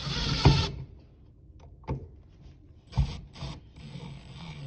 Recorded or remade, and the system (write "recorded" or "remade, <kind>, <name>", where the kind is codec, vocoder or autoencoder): recorded